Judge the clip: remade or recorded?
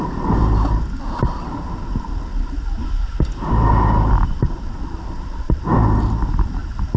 recorded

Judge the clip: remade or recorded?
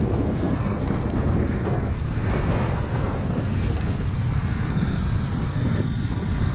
remade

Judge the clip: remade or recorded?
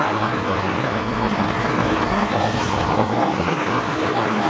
remade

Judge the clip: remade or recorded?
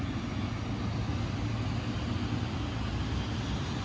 recorded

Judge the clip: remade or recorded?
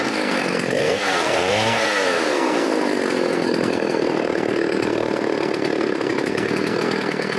remade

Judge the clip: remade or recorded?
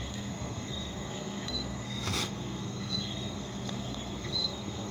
remade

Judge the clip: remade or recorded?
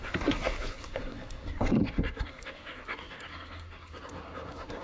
remade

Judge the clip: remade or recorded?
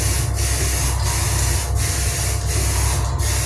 recorded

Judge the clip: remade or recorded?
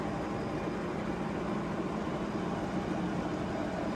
recorded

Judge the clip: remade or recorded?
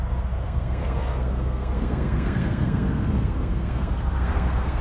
remade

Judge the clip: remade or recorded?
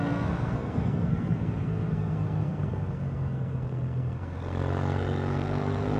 remade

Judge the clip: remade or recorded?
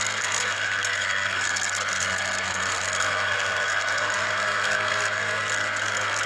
remade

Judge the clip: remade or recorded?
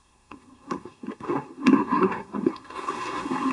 remade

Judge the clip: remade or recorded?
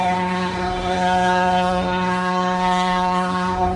remade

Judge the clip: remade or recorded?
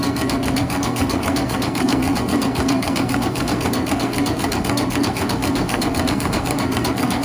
remade